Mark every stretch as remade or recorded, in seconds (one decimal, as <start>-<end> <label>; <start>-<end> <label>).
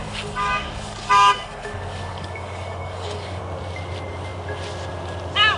0.0-3.4 remade; 3.4-5.6 recorded